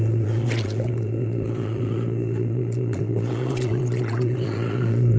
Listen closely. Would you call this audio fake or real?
fake